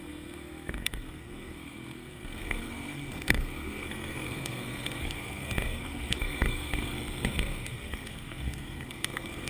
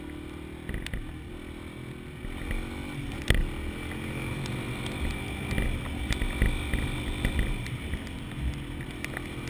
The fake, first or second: first